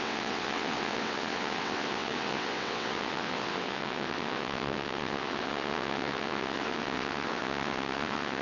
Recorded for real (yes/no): no